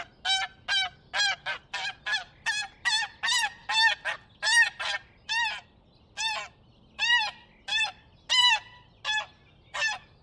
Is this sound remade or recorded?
recorded